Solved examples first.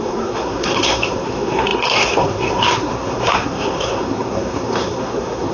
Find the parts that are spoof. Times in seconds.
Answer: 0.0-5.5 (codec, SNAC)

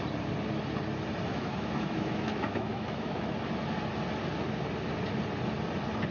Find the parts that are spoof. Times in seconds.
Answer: 1.3-3.3 (autoencoder, DAC-VAE)